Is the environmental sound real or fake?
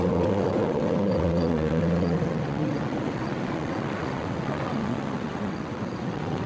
fake